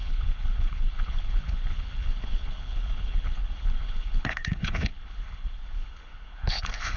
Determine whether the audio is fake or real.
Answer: fake